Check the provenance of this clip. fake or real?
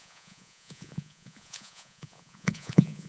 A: fake